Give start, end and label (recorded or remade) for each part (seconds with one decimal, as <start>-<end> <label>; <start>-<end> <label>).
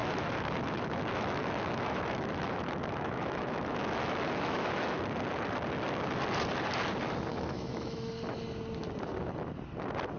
0.0-5.0 remade; 5.0-7.3 recorded; 7.3-8.1 remade; 8.1-10.2 recorded